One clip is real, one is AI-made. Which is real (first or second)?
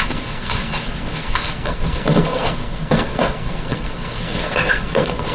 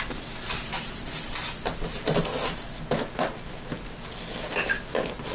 second